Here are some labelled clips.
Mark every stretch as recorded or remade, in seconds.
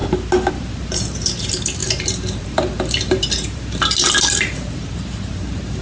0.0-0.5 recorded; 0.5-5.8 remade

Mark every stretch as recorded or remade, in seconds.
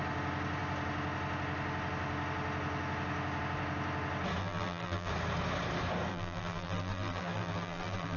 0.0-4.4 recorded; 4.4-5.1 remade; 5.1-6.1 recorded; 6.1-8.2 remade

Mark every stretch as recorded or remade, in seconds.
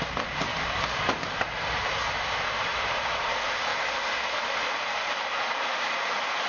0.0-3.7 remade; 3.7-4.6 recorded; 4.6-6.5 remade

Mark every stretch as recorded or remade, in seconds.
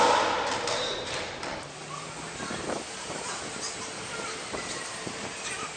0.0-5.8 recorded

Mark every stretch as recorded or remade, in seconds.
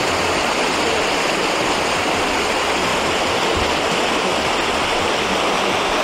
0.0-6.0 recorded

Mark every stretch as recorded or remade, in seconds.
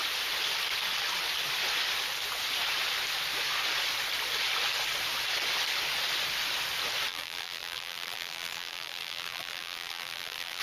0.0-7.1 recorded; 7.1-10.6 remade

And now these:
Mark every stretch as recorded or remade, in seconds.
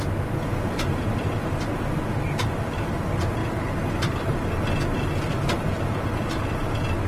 0.0-3.4 recorded; 3.4-4.5 remade; 4.5-7.1 recorded